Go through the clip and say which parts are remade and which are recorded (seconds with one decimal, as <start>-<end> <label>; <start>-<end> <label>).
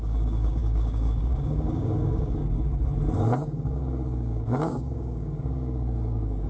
0.0-2.4 remade; 2.4-3.4 recorded; 3.4-6.5 remade